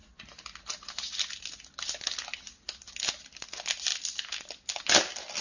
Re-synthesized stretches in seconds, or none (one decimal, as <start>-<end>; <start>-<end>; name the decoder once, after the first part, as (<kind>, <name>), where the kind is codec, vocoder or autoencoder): none